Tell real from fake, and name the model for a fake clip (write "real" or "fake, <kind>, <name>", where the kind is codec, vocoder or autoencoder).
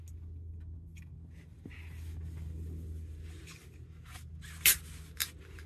real